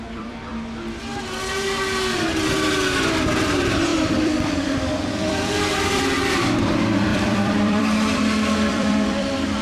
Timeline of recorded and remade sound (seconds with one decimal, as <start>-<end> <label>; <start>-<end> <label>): 0.0-0.5 remade; 0.5-3.4 recorded; 3.4-9.6 remade